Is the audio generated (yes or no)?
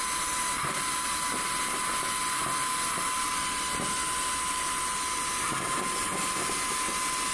no